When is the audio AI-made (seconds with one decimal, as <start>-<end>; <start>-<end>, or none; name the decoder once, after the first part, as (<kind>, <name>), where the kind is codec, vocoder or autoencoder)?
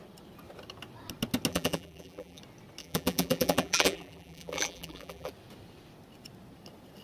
1.5-2.4 (vocoder, BigVGAN v2); 2.8-5.3